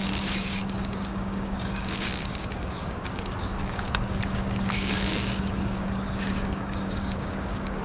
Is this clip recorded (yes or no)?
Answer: no